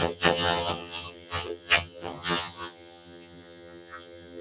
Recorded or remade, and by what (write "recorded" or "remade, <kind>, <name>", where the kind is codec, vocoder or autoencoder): remade, vocoder, HiFi-GAN